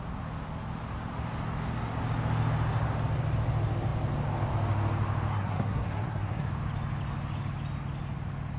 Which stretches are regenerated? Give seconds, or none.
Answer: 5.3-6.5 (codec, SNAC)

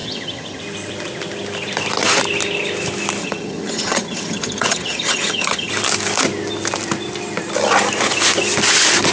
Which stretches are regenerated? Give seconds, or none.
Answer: 0.0-0.6 (vocoder, HiFi-GAN); 3.2-5.7

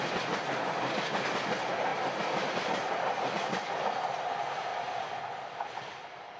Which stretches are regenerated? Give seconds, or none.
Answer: 4.7-6.4 (vocoder, BigVGAN v2)

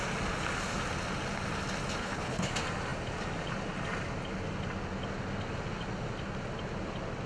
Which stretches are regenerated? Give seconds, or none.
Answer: 2.0-2.5 (codec, HILCodec)